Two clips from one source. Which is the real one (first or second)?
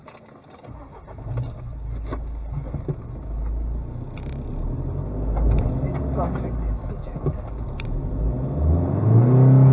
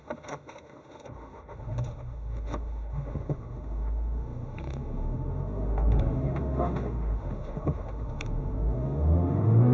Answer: first